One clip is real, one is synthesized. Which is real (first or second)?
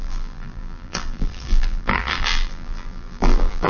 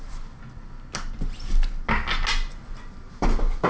second